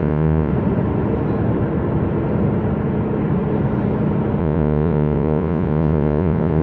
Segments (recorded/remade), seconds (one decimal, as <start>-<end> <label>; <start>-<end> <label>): 0.0-0.5 remade; 0.5-4.4 recorded; 4.4-6.6 remade